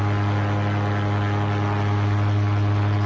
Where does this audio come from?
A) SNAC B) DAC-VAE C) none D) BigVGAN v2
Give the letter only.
C